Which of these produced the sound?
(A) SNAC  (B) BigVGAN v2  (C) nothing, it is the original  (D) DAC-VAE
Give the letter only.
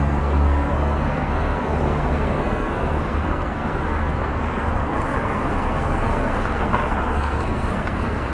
A